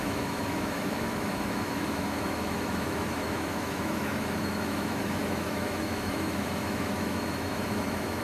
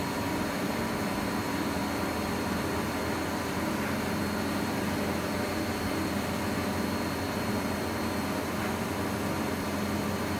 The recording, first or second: second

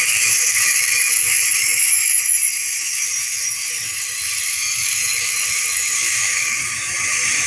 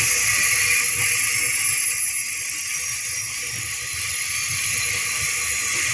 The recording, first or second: second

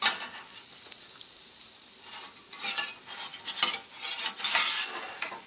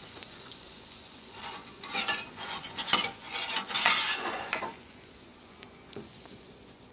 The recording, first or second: first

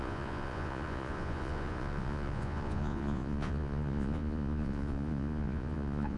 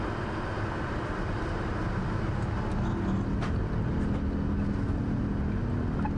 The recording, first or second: second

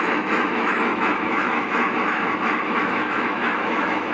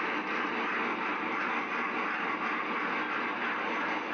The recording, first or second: second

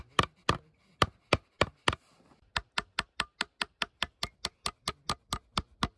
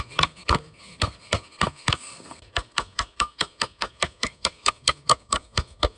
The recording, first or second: first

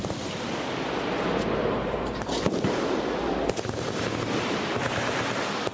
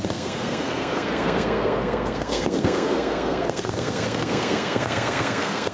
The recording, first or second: first